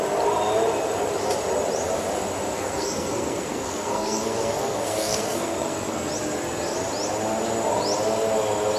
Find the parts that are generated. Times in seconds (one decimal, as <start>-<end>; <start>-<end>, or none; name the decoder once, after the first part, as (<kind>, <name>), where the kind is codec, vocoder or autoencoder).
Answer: 2.5-6.1 (codec, SNAC)